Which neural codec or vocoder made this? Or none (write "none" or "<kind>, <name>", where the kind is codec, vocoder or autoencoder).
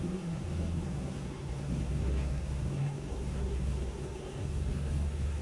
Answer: codec, SNAC